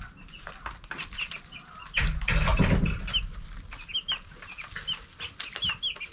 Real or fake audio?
real